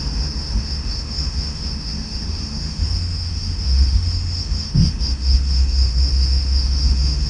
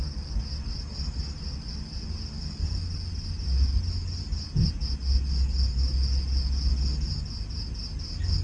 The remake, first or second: first